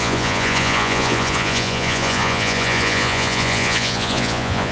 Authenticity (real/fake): fake